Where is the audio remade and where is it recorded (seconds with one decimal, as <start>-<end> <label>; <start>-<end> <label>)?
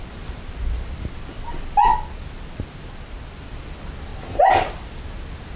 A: 0.0-5.6 recorded